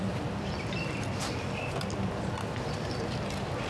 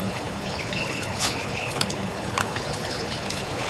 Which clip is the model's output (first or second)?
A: second